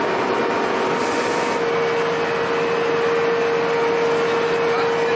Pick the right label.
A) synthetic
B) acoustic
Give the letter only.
B